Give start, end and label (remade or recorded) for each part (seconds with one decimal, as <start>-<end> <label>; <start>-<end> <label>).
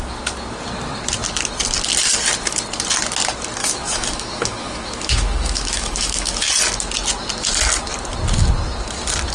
0.0-3.6 recorded; 3.6-6.5 remade; 6.5-9.3 recorded